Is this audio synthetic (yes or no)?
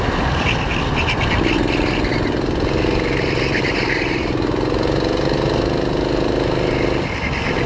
no